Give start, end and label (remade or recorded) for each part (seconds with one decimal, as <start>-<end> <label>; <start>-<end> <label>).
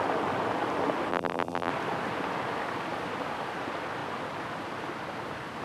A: 0.0-1.1 recorded; 1.1-1.7 remade; 1.7-5.6 recorded